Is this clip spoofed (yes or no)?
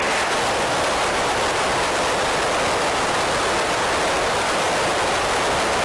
no